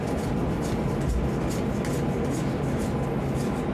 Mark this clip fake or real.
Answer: real